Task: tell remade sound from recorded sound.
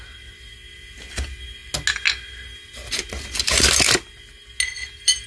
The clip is recorded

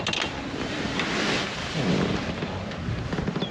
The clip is recorded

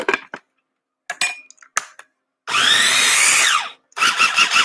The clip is recorded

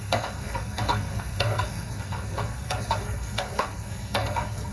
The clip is remade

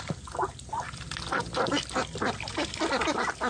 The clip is recorded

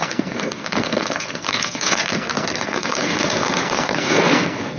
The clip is remade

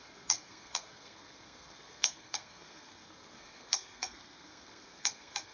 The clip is remade